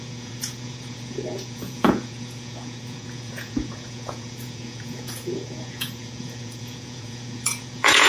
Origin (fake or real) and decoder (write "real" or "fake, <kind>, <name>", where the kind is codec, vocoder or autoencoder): fake, vocoder, Vocos